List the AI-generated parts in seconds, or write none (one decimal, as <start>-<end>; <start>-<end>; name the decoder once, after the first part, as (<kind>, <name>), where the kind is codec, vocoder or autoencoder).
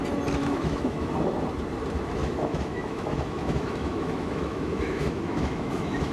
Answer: 0.4-1.1 (autoencoder, DAC-VAE); 2.2-6.1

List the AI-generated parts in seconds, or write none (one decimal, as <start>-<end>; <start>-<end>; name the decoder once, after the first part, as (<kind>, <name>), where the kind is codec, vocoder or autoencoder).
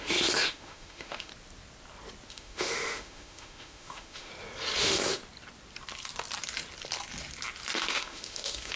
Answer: 0.0-1.3 (autoencoder, DAC-VAE); 2.3-4.3; 4.8-5.2; 7.9-8.8